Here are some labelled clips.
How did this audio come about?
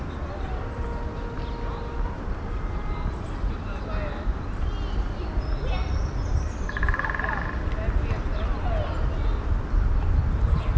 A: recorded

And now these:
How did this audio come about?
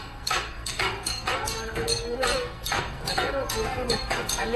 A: remade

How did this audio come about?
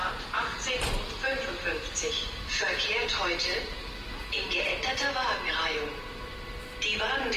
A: remade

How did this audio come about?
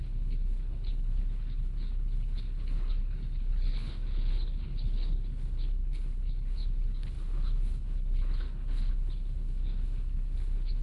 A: remade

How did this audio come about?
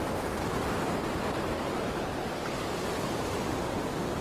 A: remade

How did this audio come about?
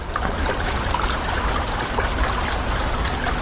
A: recorded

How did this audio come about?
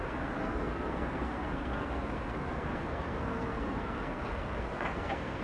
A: remade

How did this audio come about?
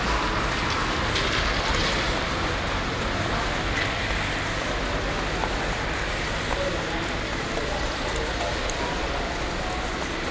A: recorded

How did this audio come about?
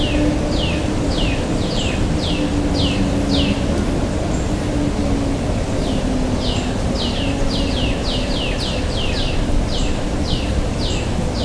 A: recorded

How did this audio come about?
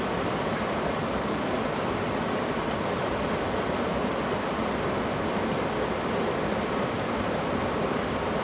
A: recorded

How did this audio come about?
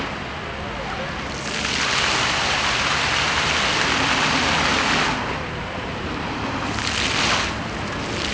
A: recorded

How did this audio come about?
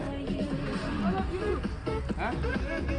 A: recorded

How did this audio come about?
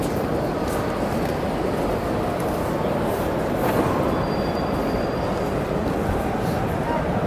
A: recorded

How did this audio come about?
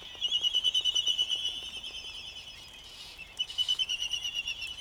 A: remade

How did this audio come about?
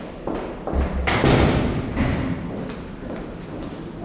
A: recorded